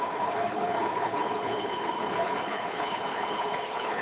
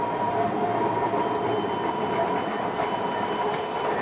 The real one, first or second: second